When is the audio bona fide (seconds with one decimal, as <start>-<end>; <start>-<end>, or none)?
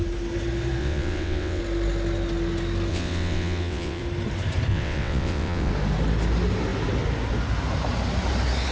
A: 0.0-0.8; 1.6-2.9; 4.0-4.7; 5.7-8.7